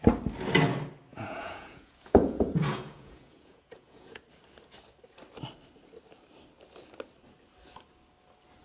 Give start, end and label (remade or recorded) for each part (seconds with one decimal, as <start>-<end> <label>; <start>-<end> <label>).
0.0-1.1 recorded; 1.1-4.2 remade; 4.2-8.6 recorded